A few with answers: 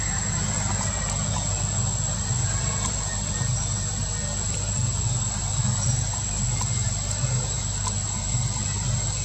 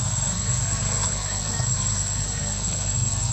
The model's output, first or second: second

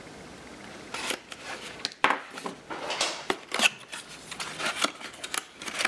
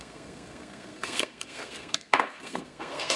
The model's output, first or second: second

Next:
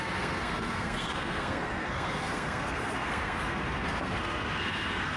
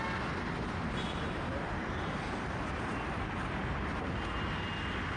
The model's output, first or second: first